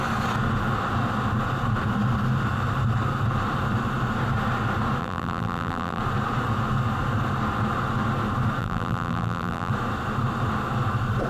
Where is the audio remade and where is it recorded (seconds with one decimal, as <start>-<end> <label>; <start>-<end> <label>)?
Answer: 0.0-5.0 recorded; 5.0-6.0 remade; 6.0-8.6 recorded; 8.6-9.7 remade; 9.7-11.3 recorded